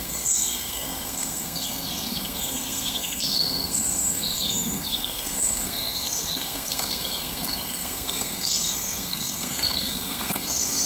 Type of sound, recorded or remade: remade